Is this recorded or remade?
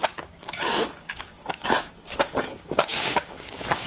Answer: remade